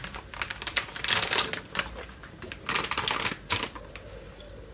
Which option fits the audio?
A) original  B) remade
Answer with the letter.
A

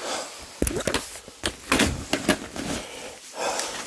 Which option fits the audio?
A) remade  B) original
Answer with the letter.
B